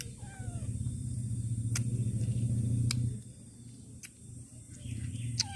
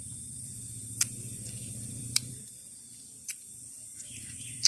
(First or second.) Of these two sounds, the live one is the first